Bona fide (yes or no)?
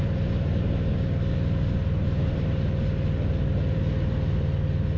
yes